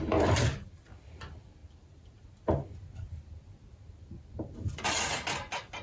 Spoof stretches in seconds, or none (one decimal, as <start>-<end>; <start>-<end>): none